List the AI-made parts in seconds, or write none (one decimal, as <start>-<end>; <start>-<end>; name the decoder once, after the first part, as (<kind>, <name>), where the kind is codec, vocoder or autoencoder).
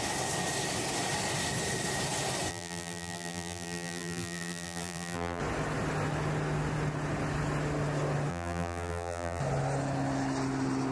2.5-5.4 (vocoder, BigVGAN v2); 8.3-9.4